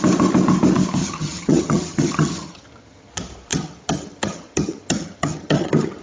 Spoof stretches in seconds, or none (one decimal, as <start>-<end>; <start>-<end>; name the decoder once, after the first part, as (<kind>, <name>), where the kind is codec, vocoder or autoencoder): 1.0-3.1 (vocoder, HiFi-GAN); 3.5-6.0